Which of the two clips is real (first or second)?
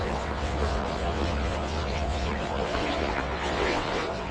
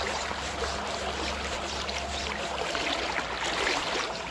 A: second